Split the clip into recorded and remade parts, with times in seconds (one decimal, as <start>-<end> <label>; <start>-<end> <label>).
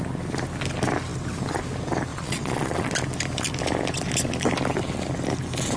0.0-2.1 recorded; 2.1-2.9 remade; 2.9-5.8 recorded